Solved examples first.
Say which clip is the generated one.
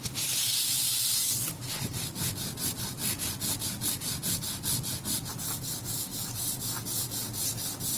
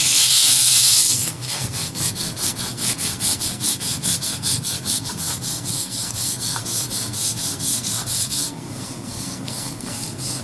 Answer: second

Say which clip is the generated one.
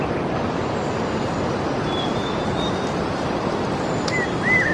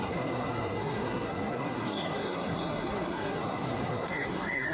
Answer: second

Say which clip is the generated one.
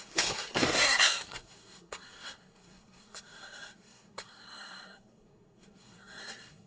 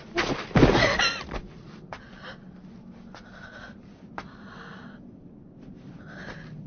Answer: first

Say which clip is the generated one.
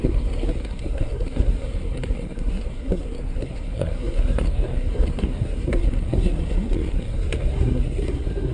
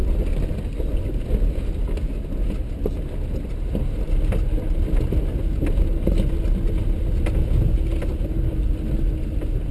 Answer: first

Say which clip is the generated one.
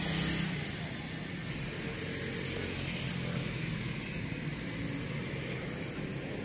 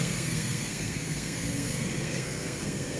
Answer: second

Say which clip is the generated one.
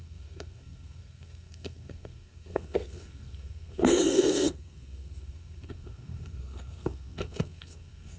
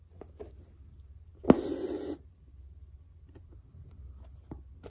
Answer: first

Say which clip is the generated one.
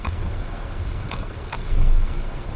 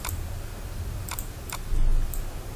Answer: first